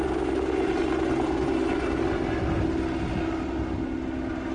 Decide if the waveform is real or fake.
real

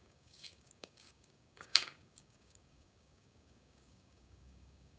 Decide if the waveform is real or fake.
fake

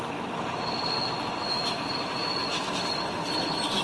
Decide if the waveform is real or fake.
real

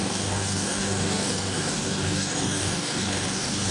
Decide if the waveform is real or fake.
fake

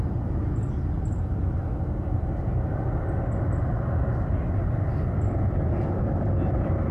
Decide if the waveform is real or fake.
real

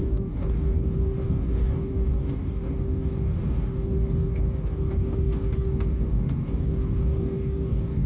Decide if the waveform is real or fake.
fake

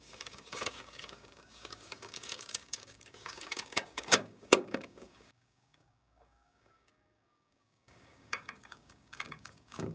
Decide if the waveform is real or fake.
fake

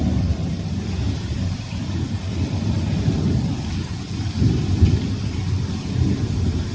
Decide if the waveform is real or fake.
real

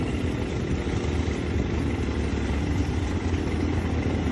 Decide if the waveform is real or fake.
real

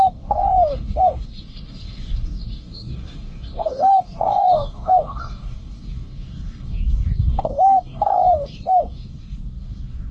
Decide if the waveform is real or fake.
fake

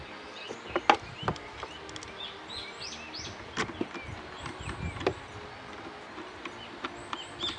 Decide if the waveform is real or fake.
real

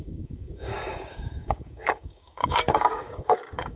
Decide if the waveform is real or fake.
fake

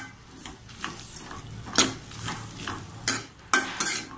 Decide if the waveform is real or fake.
real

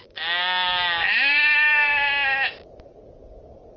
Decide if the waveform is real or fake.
real